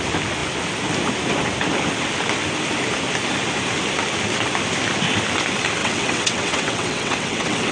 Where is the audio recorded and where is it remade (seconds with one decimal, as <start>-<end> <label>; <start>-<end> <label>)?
0.0-5.8 recorded; 5.8-7.7 remade